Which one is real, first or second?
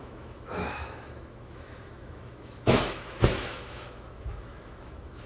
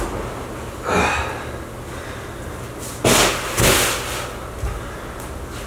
second